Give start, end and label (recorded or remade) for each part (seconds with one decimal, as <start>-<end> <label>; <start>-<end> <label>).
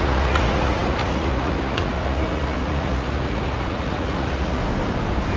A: 0.0-4.6 remade; 4.6-5.4 recorded